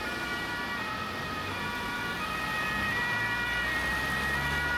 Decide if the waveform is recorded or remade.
recorded